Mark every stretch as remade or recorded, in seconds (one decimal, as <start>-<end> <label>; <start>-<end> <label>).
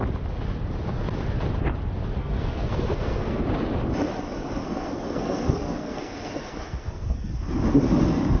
0.0-2.2 recorded; 2.2-3.4 remade; 3.4-4.6 recorded; 4.6-7.3 remade; 7.3-8.4 recorded